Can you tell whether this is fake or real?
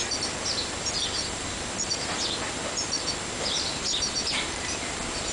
real